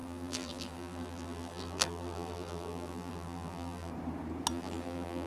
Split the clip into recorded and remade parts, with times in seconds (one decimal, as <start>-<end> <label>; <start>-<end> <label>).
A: 0.0-3.9 remade; 3.9-4.5 recorded; 4.5-5.3 remade